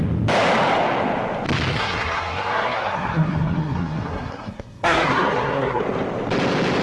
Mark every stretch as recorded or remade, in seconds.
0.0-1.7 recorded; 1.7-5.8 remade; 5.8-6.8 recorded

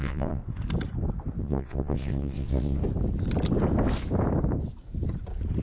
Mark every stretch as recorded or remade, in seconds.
0.0-0.4 remade; 0.4-1.4 recorded; 1.4-2.8 remade; 2.8-5.6 recorded

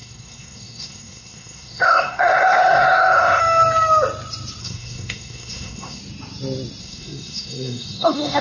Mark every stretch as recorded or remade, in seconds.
0.0-3.4 remade; 3.4-4.6 recorded; 4.6-6.0 remade; 6.0-6.8 recorded; 6.8-8.4 remade

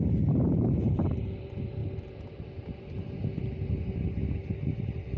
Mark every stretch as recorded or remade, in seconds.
0.0-1.8 remade; 1.8-5.2 recorded